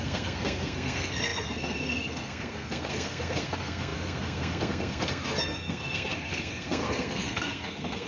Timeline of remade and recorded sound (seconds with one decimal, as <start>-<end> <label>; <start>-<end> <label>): 0.0-8.1 remade